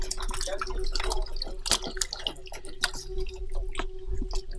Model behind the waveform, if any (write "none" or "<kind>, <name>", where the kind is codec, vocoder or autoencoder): none